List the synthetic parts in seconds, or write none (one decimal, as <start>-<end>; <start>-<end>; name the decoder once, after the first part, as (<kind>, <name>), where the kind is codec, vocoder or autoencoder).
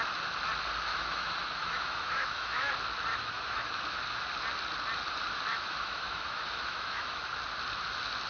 0.9-2.7 (autoencoder, DAC-VAE); 3.1-3.7; 5.5-7.3